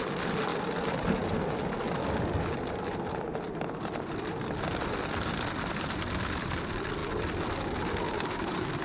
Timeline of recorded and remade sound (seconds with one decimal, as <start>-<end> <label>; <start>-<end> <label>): 0.0-0.5 remade; 0.5-4.1 recorded; 4.1-7.0 remade; 7.0-8.1 recorded; 8.1-8.8 remade